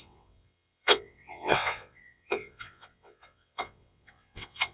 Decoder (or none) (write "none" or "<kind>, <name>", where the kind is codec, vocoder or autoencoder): vocoder, WaveNeXt